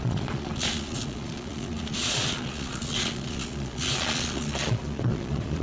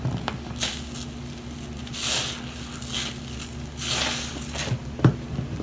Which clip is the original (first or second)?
second